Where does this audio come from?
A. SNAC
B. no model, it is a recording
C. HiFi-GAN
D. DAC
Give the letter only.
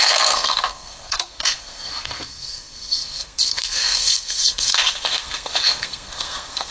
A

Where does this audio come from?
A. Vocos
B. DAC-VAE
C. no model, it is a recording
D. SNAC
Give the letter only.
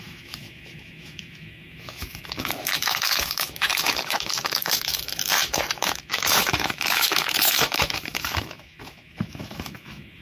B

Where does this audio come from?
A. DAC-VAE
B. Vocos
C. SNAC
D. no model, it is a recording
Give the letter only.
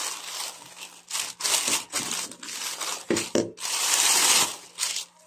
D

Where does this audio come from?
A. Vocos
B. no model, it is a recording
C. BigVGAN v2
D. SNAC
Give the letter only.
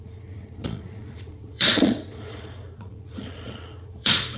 A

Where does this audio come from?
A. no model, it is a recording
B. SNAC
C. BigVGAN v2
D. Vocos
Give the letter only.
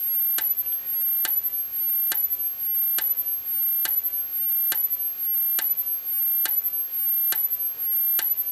A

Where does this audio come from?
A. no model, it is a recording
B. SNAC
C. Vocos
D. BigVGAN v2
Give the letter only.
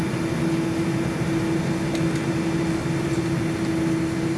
A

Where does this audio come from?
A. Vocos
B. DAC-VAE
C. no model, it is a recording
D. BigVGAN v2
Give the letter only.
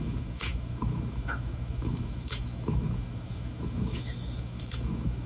B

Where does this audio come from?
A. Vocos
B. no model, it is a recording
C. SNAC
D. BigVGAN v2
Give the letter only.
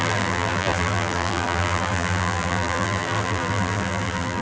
D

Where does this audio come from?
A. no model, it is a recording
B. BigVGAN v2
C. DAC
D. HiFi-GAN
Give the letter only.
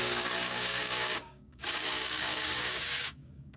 C